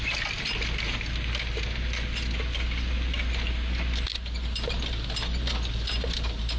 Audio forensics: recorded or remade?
recorded